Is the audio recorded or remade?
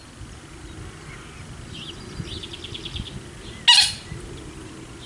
recorded